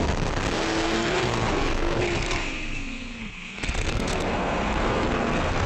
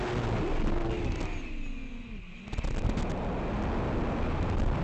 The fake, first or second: first